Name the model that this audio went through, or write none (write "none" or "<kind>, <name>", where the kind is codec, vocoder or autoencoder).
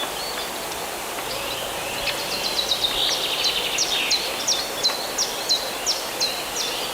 none